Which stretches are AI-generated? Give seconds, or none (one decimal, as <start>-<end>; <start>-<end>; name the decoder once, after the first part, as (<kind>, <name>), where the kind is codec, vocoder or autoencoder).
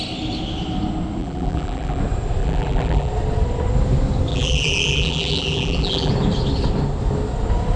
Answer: 1.2-2.0 (vocoder, BigVGAN v2); 2.4-3.1; 4.3-6.1